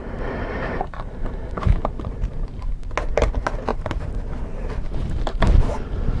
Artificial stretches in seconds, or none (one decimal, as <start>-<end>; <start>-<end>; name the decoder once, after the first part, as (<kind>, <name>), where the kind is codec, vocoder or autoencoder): 0.0-2.9 (vocoder, BigVGAN v2); 3.7-6.2